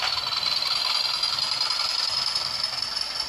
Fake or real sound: real